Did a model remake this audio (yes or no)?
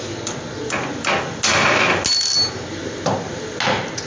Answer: no